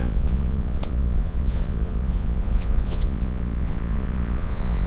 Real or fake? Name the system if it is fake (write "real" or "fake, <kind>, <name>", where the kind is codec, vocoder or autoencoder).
fake, vocoder, Vocos